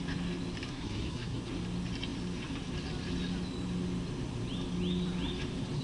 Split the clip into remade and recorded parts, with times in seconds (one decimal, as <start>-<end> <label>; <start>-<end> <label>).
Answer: 0.0-0.7 recorded; 0.7-1.4 remade; 1.4-5.8 recorded